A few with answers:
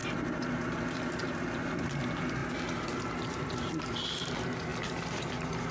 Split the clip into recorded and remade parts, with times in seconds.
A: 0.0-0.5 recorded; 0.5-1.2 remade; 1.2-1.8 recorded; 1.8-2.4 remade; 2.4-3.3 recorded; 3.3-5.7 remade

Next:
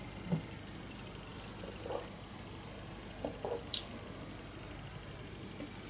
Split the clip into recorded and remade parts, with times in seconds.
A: 0.0-5.9 recorded